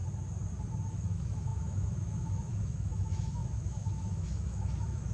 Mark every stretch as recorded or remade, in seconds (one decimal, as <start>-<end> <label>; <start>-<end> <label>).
0.0-0.9 recorded; 0.9-5.1 remade